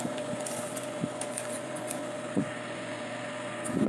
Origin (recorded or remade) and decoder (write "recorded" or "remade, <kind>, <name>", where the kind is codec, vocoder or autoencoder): remade, vocoder, Vocos